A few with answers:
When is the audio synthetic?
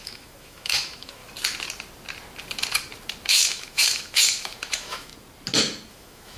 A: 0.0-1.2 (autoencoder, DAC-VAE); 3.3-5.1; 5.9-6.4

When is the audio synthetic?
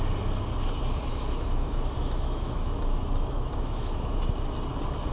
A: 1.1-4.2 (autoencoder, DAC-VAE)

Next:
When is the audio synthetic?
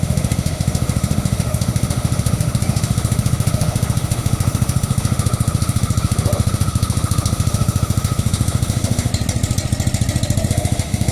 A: 0.0-9.1 (autoencoder, DAC-VAE); 10.5-11.1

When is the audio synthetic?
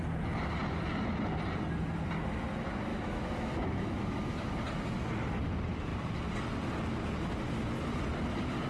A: 2.9-4.5 (autoencoder, DAC-VAE)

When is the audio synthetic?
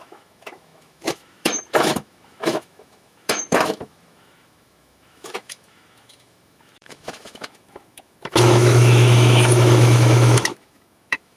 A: 0.0-11.4 (autoencoder, DAC-VAE)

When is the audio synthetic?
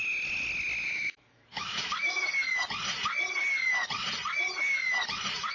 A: 0.8-2.3 (autoencoder, DAC-VAE)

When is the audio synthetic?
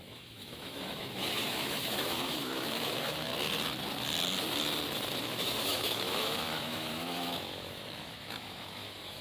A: 0.0-3.3 (autoencoder, DAC-VAE); 5.2-9.2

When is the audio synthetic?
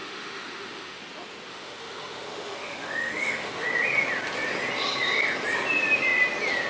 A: 0.0-1.0 (autoencoder, DAC-VAE); 1.5-3.7